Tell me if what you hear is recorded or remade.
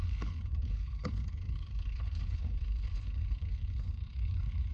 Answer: remade